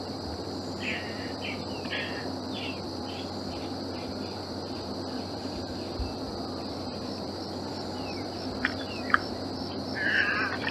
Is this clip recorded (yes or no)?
no